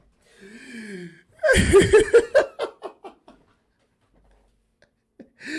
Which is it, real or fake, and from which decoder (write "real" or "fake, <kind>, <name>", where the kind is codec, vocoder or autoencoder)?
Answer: real